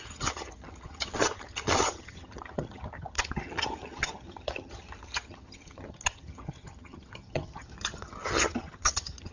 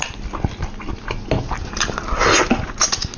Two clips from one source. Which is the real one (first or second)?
second